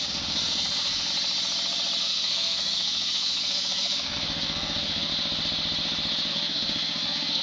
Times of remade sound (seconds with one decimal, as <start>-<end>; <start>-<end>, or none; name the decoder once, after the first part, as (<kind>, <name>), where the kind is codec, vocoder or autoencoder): 0.0-1.1 (codec, SNAC); 2.0-5.1; 6.3-7.4